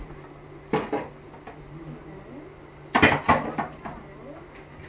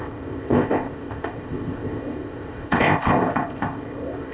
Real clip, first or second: first